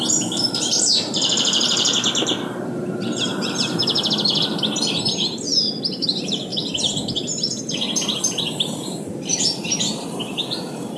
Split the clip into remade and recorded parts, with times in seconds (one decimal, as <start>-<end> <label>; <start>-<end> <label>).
0.0-3.8 remade; 3.8-5.0 recorded; 5.0-5.5 remade; 5.5-6.0 recorded; 6.0-6.5 remade; 6.5-8.2 recorded; 8.2-9.3 remade; 9.3-9.9 recorded; 9.9-11.0 remade